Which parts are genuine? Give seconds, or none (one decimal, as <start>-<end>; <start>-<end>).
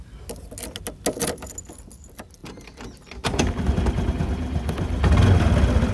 0.0-5.9